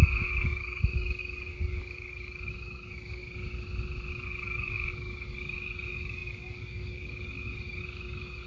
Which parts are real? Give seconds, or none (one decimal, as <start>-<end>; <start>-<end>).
3.2-4.1